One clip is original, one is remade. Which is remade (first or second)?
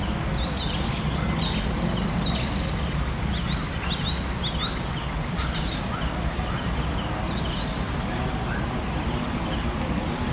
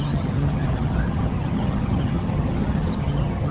second